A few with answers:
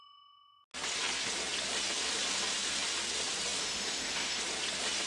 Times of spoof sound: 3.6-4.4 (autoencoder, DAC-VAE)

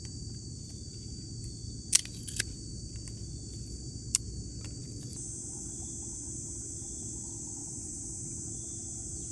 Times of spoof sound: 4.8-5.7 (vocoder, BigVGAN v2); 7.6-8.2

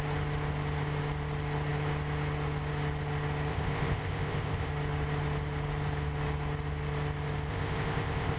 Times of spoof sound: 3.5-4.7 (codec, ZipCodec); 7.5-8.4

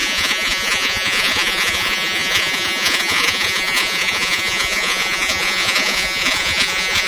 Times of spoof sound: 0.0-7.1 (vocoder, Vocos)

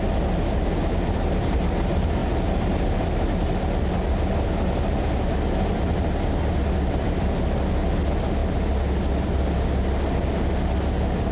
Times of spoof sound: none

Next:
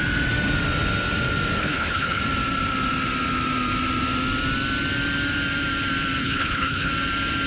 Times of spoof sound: 1.6-2.2 (codec, HILCodec); 6.2-6.9

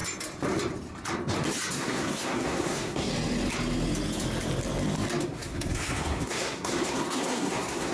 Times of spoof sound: 1.7-3.1 (codec, SNAC); 5.2-7.9

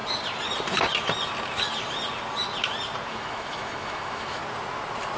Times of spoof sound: 3.1-4.4 (autoencoder, DAC-VAE)